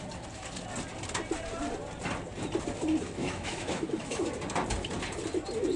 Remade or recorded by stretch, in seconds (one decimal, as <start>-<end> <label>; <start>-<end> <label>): 0.0-3.2 recorded; 3.2-4.2 remade; 4.2-5.8 recorded